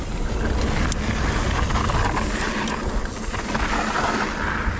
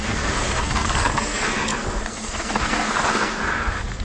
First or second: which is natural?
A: first